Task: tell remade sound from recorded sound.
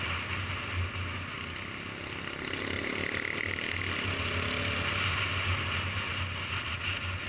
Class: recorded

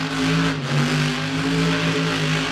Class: recorded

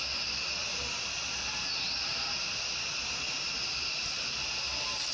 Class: recorded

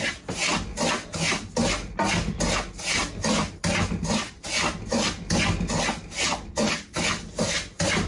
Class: recorded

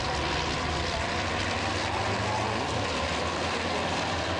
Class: recorded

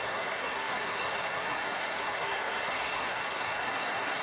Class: remade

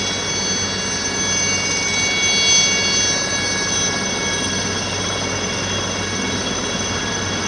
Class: recorded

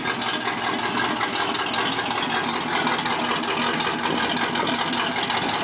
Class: recorded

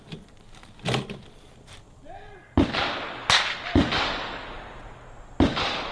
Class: recorded